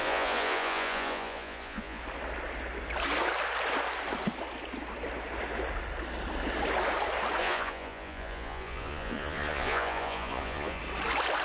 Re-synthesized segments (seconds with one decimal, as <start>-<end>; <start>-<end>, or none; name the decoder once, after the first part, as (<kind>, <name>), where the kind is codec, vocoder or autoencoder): 0.0-2.0 (vocoder, Vocos); 7.4-10.8

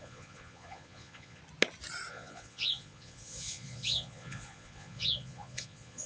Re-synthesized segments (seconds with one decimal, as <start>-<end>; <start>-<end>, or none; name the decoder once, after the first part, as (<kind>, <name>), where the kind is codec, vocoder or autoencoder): 0.0-1.4 (vocoder, Vocos); 2.1-6.1

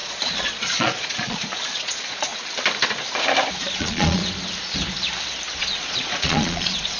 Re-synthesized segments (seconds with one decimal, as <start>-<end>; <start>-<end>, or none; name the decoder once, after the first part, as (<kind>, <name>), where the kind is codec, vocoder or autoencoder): 0.0-2.3 (vocoder, Vocos); 3.6-4.2; 5.6-7.0

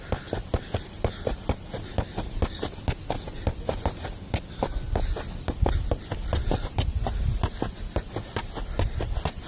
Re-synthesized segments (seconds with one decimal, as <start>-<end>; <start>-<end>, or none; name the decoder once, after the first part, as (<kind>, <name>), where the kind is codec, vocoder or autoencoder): none

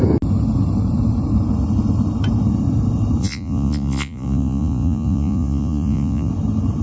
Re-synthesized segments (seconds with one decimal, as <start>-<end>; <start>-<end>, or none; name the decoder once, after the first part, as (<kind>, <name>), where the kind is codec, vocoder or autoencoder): 3.2-6.3 (vocoder, Vocos)

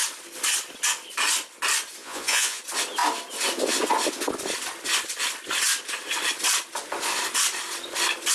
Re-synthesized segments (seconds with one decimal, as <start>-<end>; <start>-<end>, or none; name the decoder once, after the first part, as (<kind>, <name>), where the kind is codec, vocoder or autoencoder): 2.0-2.6 (vocoder, Vocos)